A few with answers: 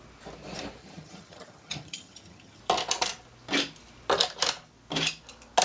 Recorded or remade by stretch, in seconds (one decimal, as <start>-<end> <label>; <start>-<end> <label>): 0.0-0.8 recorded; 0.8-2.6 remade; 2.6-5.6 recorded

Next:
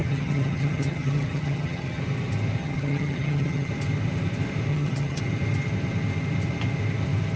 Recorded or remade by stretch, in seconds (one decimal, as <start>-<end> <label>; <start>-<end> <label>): 0.0-2.0 remade; 2.0-2.6 recorded; 2.6-3.7 remade; 3.7-4.7 recorded; 4.7-5.2 remade; 5.2-7.4 recorded

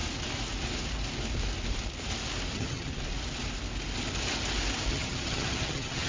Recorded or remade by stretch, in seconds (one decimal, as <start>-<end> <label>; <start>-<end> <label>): 0.0-2.5 recorded; 2.5-2.9 remade; 2.9-4.9 recorded; 4.9-6.1 remade

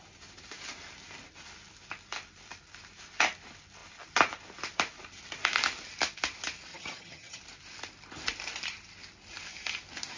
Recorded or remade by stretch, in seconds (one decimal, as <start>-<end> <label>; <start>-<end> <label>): 0.0-6.7 recorded; 6.7-7.4 remade; 7.4-10.2 recorded